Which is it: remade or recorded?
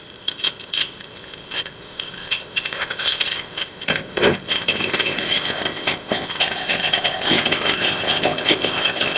remade